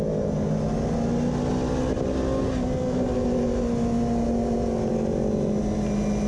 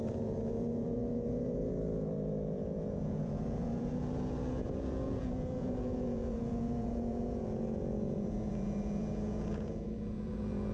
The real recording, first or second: first